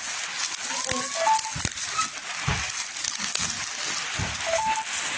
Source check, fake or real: real